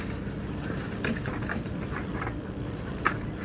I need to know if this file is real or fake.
real